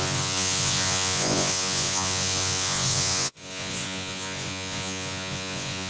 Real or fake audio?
fake